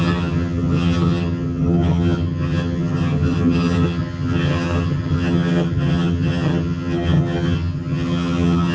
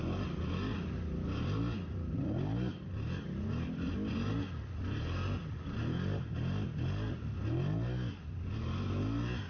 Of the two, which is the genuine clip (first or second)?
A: second